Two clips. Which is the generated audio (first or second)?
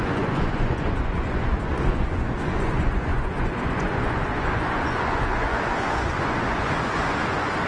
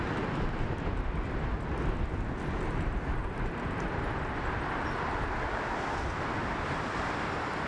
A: first